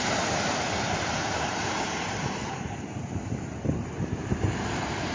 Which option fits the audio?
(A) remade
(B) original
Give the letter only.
A